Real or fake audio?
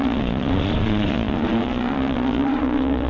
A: fake